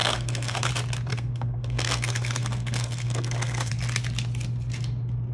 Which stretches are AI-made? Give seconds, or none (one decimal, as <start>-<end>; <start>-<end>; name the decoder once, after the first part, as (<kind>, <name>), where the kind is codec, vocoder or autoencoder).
0.0-0.7 (codec, SNAC); 1.1-3.7